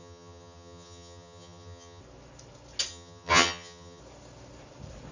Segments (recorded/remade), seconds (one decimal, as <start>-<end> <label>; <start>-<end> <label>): 0.0-2.0 remade; 2.0-2.9 recorded; 2.9-4.0 remade; 4.0-5.1 recorded